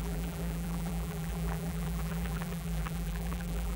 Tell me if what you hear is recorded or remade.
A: remade